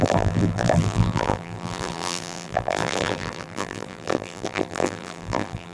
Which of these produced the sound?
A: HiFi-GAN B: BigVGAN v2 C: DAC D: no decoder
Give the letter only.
B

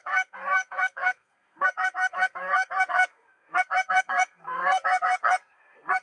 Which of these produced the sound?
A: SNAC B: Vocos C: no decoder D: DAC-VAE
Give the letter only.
A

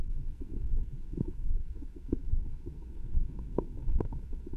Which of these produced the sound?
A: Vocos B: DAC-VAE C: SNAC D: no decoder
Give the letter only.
C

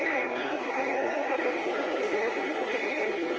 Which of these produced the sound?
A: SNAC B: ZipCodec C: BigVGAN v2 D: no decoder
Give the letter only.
A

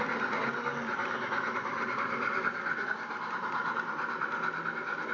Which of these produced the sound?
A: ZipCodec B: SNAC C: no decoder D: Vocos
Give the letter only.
C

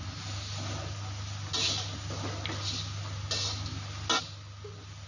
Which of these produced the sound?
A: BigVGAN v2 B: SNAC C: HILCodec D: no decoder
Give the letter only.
D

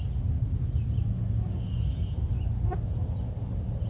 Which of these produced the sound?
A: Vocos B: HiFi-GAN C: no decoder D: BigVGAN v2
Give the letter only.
C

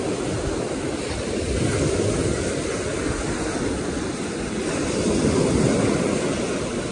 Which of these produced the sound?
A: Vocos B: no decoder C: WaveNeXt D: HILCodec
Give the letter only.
B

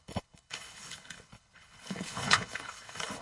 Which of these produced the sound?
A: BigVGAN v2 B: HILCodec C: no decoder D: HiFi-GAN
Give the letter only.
B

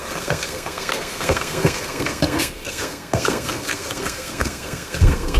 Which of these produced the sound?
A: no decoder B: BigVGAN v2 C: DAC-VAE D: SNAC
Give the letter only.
D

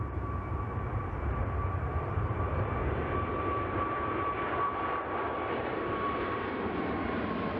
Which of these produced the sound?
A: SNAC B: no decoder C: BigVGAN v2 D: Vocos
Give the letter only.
C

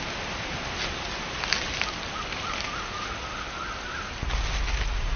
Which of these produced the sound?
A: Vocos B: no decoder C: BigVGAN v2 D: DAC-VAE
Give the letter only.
B